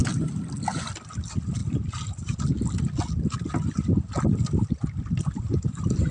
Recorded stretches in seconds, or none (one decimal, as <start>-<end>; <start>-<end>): 0.0-6.1